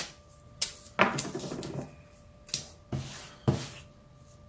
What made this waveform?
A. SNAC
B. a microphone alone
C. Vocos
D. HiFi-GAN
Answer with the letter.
B